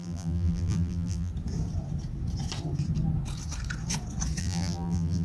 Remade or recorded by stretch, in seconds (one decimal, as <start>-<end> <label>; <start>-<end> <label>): 0.0-1.3 remade; 1.3-4.4 recorded; 4.4-5.2 remade